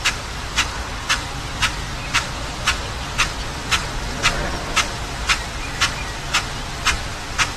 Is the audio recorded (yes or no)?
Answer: yes